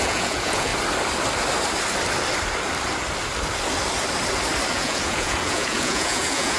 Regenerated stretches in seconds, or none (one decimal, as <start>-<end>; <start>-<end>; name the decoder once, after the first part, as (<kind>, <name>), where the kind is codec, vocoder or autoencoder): 0.0-0.7 (vocoder, Vocos); 4.7-6.6

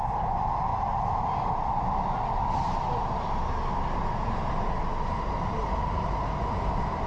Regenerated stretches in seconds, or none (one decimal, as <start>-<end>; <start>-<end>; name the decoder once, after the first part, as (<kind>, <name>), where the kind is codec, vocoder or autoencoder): none

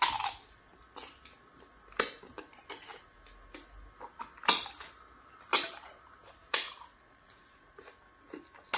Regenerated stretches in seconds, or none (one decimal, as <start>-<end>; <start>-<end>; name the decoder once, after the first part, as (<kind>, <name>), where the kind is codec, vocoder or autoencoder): 6.4-7.9 (vocoder, Vocos)

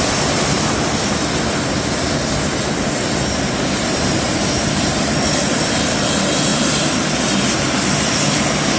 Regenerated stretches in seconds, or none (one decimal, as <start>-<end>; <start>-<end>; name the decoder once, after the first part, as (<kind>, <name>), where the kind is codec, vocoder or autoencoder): none

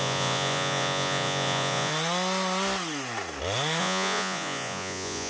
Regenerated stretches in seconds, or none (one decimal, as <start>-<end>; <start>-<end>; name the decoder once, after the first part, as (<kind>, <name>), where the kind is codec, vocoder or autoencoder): 0.0-1.9 (vocoder, Vocos); 3.8-5.3

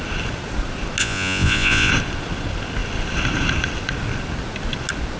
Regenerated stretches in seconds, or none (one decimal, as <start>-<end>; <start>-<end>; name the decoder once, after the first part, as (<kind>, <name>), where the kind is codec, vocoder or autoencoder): 1.0-1.9 (vocoder, Vocos)

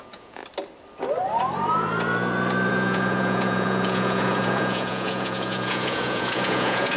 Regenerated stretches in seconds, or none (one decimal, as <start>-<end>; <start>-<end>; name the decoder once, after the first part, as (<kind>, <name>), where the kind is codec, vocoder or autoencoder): 0.0-0.4 (vocoder, Vocos); 2.7-7.0

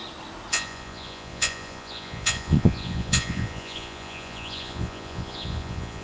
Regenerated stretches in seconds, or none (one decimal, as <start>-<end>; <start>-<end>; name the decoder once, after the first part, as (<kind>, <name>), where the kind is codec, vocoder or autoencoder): 0.5-6.0 (vocoder, Vocos)